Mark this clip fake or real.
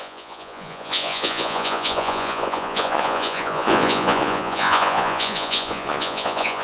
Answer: fake